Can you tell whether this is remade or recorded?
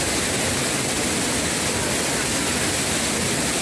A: recorded